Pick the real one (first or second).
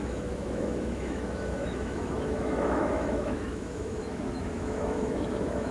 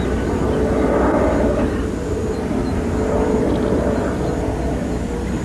second